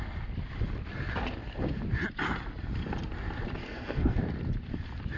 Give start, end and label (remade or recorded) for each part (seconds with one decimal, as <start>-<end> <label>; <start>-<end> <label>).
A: 0.0-3.6 recorded; 3.6-4.2 remade; 4.2-5.2 recorded

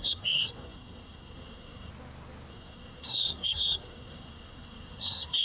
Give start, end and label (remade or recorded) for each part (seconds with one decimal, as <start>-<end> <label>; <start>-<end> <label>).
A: 0.0-1.9 remade; 1.9-2.5 recorded; 2.5-5.4 remade

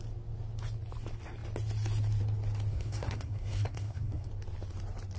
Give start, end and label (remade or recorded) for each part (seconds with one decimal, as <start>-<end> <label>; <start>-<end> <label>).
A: 0.0-2.7 recorded; 2.7-4.3 remade; 4.3-5.2 recorded